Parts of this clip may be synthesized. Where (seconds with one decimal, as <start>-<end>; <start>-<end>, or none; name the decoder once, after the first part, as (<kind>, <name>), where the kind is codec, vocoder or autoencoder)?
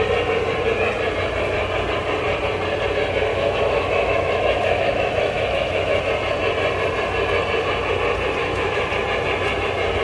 3.3-6.0 (autoencoder, DAC-VAE); 8.4-8.9